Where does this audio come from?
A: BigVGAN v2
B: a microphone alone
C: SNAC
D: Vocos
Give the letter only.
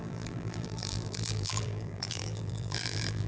A